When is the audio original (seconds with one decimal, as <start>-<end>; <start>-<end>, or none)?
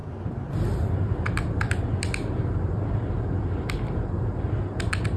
0.0-5.2